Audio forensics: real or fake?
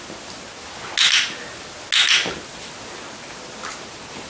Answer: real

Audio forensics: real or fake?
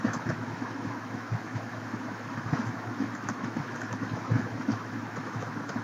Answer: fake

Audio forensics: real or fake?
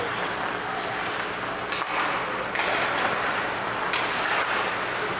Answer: real